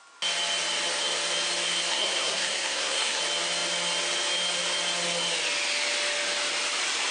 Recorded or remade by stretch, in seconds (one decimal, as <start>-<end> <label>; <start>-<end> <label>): 0.0-1.9 recorded; 1.9-3.2 remade; 3.2-7.1 recorded